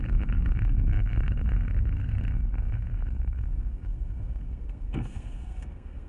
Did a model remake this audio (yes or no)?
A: yes